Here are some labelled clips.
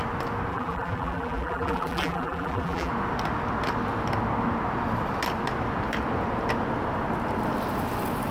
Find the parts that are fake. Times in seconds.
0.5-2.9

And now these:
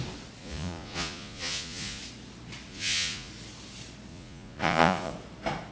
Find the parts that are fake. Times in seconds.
0.4-2.0; 2.7-3.3; 4.1-5.1